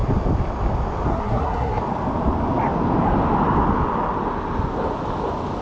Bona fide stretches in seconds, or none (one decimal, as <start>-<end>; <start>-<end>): 0.0-1.1; 1.8-5.6